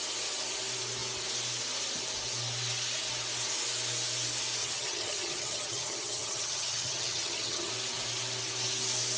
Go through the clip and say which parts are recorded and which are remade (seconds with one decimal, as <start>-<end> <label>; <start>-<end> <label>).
0.0-4.6 recorded; 4.6-7.7 remade; 7.7-9.2 recorded